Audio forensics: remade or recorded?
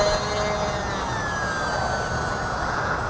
recorded